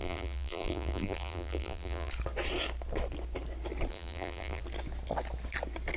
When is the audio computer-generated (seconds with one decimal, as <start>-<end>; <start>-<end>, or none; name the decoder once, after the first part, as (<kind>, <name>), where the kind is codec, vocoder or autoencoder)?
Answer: 0.0-2.1 (vocoder, BigVGAN v2); 3.9-4.6